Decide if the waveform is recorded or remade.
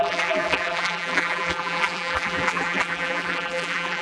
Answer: remade